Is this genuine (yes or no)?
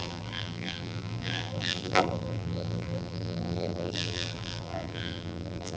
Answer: no